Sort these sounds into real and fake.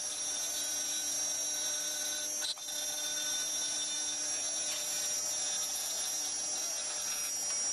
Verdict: real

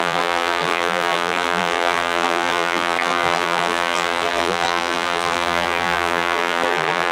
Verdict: fake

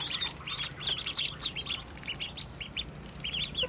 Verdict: fake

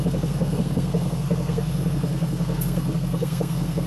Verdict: fake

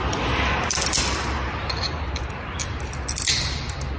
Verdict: real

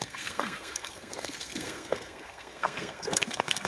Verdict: fake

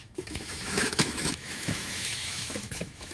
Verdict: fake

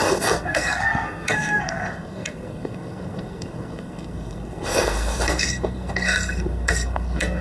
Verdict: fake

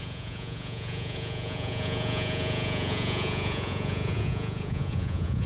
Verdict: fake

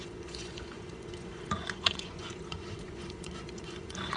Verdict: fake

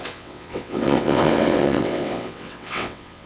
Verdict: fake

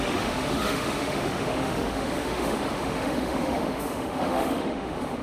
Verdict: fake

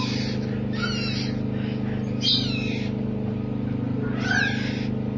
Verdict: real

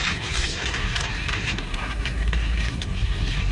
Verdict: fake